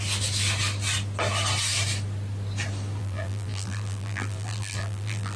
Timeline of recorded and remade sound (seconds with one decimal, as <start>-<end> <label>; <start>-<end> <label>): 0.0-3.0 recorded; 3.0-5.4 remade